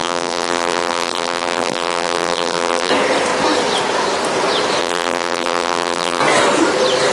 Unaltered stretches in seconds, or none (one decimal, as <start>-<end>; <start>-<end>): 2.9-4.8; 6.2-7.1